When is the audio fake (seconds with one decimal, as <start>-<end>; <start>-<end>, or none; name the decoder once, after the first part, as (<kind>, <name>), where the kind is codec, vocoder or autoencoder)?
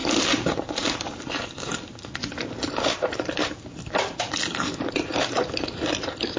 0.5-1.7 (vocoder, BigVGAN v2); 2.3-6.4